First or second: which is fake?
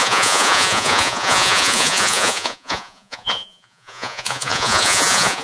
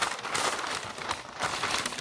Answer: first